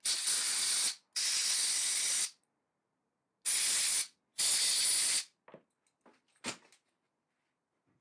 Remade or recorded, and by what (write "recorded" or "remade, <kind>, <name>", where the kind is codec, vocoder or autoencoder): recorded